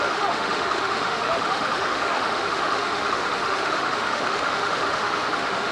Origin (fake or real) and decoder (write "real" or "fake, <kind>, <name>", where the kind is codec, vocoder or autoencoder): fake, autoencoder, DAC-VAE